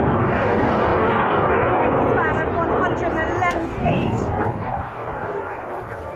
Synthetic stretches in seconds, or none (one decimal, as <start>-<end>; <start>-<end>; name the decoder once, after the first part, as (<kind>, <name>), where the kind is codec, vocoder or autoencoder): 0.0-2.0 (codec, DAC); 3.5-6.2